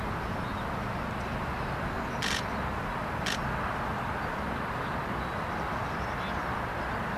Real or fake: real